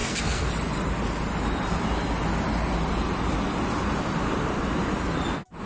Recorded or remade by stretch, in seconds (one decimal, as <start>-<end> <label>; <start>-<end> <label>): 0.0-0.5 remade; 0.5-5.7 recorded